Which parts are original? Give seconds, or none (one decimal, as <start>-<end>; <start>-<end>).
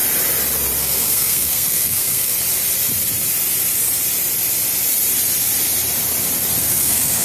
0.0-0.8; 2.3-6.6